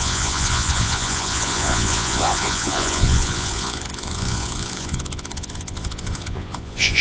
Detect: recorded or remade remade